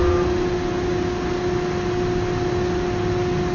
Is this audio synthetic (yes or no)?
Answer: no